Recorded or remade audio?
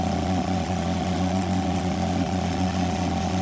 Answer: remade